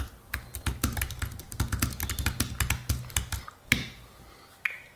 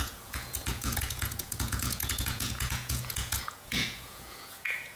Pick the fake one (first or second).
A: second